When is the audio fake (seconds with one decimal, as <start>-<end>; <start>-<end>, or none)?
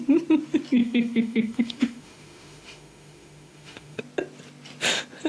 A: 0.8-4.0